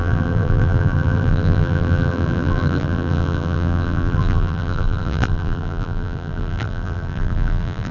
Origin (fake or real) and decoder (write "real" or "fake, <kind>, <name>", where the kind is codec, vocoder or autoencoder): fake, vocoder, BigVGAN v2